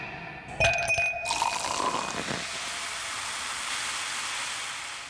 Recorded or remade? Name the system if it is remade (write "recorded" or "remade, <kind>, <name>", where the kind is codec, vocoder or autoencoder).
recorded